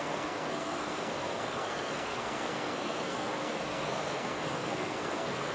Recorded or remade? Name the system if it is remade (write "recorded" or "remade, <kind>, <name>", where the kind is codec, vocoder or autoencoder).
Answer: remade, codec, SNAC